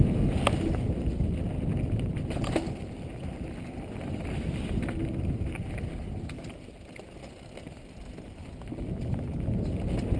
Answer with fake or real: real